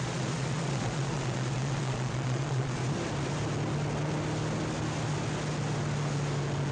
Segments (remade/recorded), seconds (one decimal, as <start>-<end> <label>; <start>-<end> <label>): 0.0-2.8 remade; 2.8-6.7 recorded